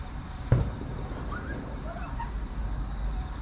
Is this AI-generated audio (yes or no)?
no